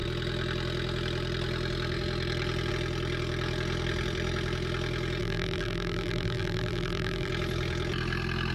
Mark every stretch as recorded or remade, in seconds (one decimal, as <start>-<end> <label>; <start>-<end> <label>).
0.0-5.2 recorded; 5.2-7.3 remade; 7.3-8.5 recorded